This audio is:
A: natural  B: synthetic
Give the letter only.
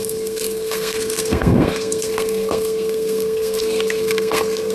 B